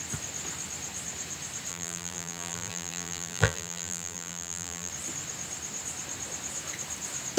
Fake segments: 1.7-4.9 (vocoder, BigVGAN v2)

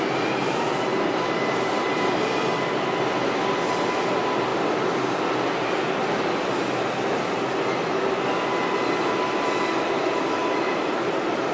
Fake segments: 10.4-11.5 (vocoder, BigVGAN v2)

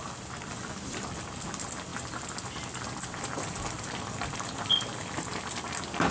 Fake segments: none

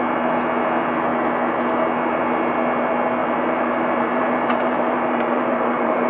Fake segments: 3.2-6.1 (vocoder, BigVGAN v2)

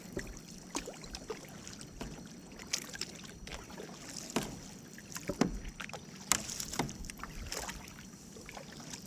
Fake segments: none

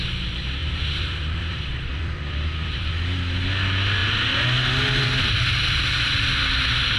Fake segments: 0.6-2.9 (vocoder, BigVGAN v2)

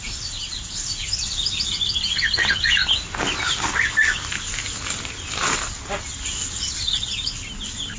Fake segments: 0.4-1.1 (vocoder, BigVGAN v2)

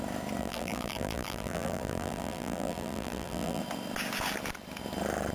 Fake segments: 0.4-3.6 (vocoder, BigVGAN v2)